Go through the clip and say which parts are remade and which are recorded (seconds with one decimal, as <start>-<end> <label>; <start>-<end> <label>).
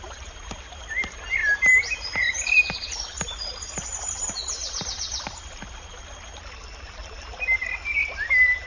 0.0-8.7 recorded